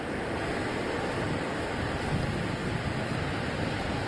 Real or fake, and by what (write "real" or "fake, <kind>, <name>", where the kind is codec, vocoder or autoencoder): real